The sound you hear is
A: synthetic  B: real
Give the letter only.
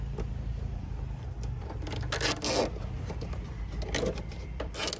B